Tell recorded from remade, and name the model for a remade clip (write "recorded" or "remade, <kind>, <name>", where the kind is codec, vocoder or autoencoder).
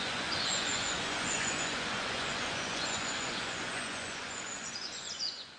remade, vocoder, Vocos